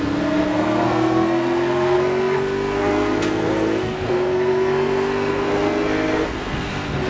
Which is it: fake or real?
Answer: fake